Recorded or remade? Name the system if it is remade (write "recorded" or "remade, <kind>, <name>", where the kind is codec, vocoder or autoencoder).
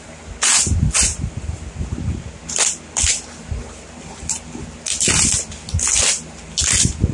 recorded